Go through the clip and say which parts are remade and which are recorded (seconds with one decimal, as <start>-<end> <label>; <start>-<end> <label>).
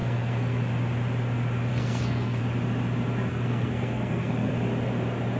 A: 0.0-0.6 remade; 0.6-1.7 recorded; 1.7-2.4 remade; 2.4-3.3 recorded; 3.3-4.5 remade; 4.5-5.4 recorded